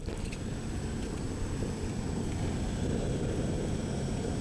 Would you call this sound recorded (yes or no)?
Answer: yes